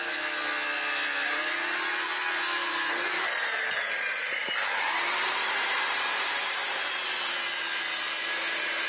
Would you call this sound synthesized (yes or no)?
no